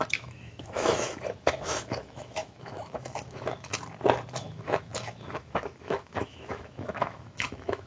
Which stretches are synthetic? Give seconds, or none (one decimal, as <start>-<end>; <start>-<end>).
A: 0.0-3.7; 4.4-7.9